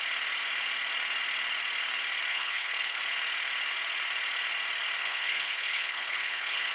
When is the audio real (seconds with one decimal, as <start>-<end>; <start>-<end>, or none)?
0.0-2.3; 3.0-5.0